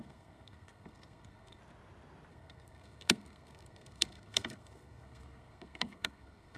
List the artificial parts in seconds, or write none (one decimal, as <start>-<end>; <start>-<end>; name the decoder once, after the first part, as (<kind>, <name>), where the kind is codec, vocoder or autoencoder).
0.0-1.6 (codec, SNAC); 2.3-6.6